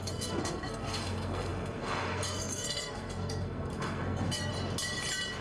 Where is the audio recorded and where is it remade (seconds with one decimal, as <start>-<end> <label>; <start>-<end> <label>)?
0.0-4.5 remade; 4.5-5.4 recorded